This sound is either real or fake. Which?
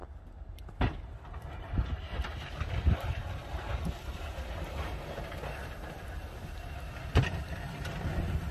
real